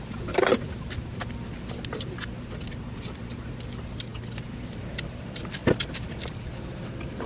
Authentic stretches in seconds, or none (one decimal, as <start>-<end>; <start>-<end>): 0.0-7.3